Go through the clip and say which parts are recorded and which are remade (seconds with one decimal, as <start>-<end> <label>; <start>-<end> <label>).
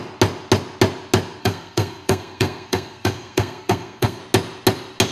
0.0-1.4 recorded; 1.4-4.2 remade; 4.2-5.1 recorded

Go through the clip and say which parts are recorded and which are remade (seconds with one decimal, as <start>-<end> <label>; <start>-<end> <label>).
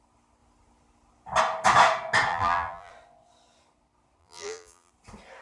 0.0-2.3 recorded; 2.3-2.9 remade; 2.9-4.2 recorded; 4.2-4.9 remade; 4.9-5.4 recorded